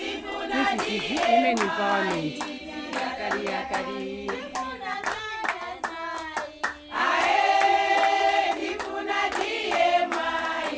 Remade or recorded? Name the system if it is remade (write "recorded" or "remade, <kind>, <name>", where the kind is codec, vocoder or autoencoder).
recorded